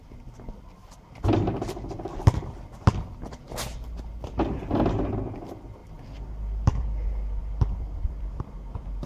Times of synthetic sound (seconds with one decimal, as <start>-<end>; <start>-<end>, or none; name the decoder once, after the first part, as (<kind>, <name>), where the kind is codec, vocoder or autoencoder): 5.8-8.4 (vocoder, BigVGAN v2)